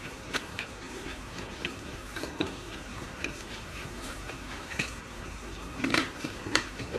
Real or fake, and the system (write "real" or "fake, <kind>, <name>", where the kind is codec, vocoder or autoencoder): fake, codec, SNAC